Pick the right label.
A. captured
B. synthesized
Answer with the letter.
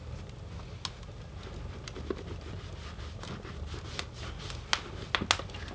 A